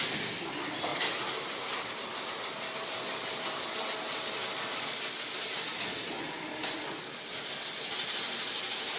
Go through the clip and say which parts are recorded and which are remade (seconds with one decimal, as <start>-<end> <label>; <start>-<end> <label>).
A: 0.0-0.9 recorded; 0.9-3.6 remade; 3.6-9.0 recorded